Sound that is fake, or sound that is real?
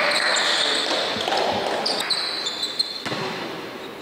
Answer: real